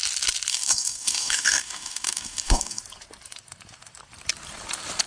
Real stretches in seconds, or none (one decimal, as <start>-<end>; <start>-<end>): 0.0-0.5; 2.8-5.1